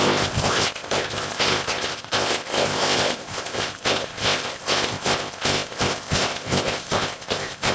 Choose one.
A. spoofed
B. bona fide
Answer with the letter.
A